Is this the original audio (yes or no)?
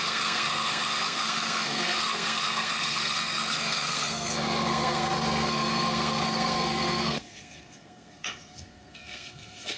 no